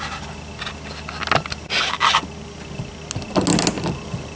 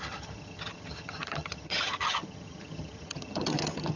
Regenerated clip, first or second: second